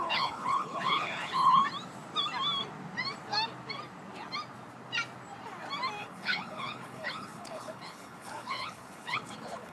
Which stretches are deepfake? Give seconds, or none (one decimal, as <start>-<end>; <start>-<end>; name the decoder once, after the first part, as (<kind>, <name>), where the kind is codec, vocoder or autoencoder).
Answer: 0.0-1.6 (codec, HILCodec); 6.0-9.7